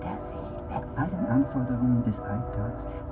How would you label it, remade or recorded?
recorded